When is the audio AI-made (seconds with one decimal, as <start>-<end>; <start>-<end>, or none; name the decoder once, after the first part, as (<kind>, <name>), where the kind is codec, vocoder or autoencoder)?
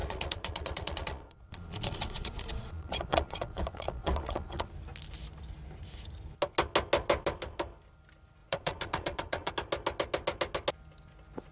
0.0-4.7 (vocoder, Vocos); 8.4-9.5